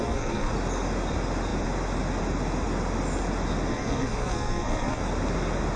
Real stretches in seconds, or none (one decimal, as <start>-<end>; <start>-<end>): 0.5-3.7; 5.0-5.8